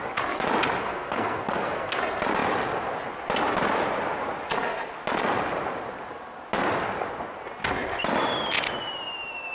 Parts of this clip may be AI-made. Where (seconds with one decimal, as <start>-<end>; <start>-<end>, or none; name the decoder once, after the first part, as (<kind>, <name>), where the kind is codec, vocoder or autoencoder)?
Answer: 0.8-2.0 (codec, SNAC)